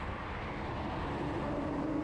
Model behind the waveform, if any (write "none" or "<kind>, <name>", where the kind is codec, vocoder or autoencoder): none